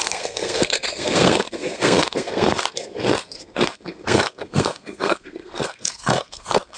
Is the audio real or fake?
fake